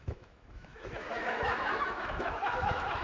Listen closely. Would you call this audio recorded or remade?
remade